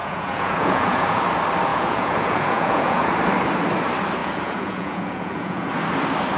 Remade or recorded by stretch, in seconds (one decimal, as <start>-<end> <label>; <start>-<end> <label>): 0.0-1.2 remade; 1.2-1.7 recorded; 1.7-3.1 remade; 3.1-4.2 recorded; 4.2-5.7 remade; 5.7-6.4 recorded